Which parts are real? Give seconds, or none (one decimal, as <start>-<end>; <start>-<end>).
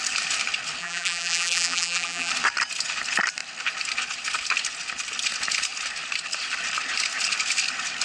0.0-0.8; 2.3-8.0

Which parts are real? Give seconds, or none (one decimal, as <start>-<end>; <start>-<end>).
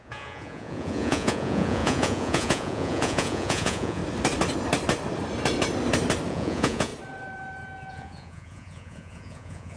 4.0-6.3; 6.9-7.9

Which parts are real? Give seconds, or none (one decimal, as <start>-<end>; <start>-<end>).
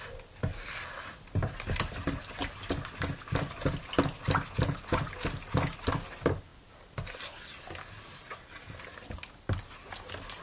0.0-10.4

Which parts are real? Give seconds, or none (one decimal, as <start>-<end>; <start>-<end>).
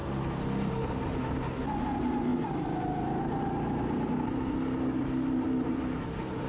0.0-6.5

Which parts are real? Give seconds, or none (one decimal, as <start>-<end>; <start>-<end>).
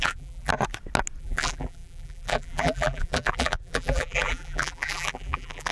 0.5-1.2